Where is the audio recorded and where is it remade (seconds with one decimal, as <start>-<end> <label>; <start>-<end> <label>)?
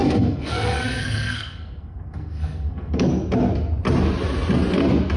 0.0-3.1 remade; 3.1-5.2 recorded